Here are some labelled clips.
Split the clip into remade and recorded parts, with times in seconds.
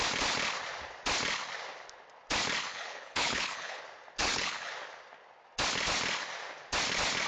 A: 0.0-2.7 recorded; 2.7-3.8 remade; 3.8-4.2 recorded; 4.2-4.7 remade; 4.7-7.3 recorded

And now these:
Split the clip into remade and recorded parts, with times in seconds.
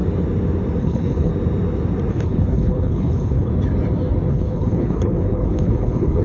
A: 0.0-0.8 recorded; 0.8-1.3 remade; 1.3-2.1 recorded; 2.1-3.5 remade; 3.5-4.3 recorded; 4.3-6.2 remade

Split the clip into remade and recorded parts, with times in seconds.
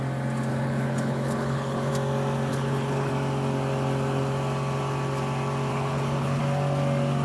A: 0.0-0.5 recorded; 0.5-1.9 remade; 1.9-2.5 recorded; 2.5-3.1 remade; 3.1-5.7 recorded; 5.7-6.4 remade; 6.4-7.2 recorded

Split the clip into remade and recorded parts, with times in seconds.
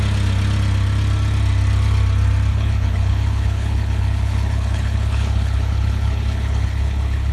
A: 0.0-2.5 recorded; 2.5-7.3 remade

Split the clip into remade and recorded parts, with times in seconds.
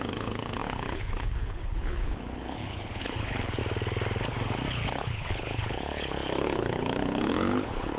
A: 0.0-3.6 remade; 3.6-4.7 recorded; 4.7-8.0 remade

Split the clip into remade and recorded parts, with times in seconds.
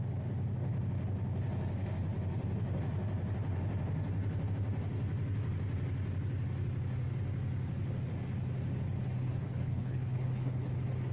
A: 0.0-9.3 recorded; 9.3-10.7 remade; 10.7-11.1 recorded